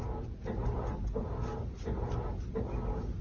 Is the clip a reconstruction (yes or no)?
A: no